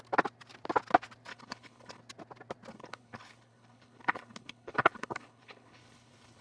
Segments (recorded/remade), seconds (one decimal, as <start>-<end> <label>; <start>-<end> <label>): 0.0-1.3 recorded; 1.3-2.0 remade; 2.0-2.7 recorded; 2.7-6.4 remade